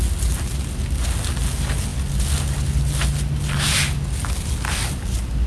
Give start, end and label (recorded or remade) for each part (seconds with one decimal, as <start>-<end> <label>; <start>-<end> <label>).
0.0-5.5 recorded